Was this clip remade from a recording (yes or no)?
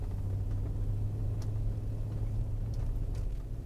no